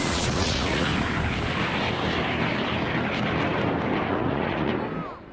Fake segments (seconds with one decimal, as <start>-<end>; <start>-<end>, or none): 0.0-0.9; 4.1-4.7